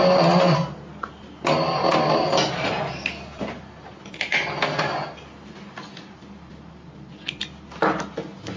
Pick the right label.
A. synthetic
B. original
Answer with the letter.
B